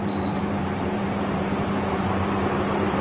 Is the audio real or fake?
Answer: fake